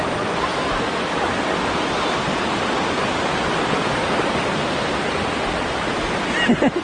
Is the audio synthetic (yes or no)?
no